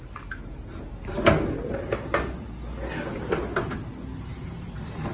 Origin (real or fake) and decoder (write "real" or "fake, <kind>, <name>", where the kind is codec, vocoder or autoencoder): real